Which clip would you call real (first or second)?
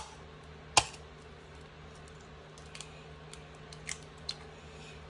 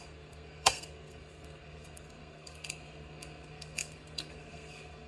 first